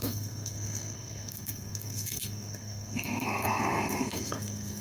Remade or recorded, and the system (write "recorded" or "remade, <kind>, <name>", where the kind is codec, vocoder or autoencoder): remade, codec, SNAC